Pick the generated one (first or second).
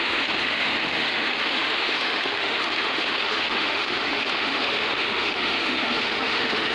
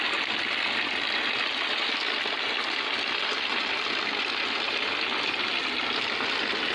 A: first